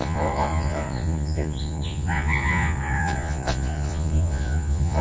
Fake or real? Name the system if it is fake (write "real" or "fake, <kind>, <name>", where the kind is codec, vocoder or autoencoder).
fake, vocoder, Vocos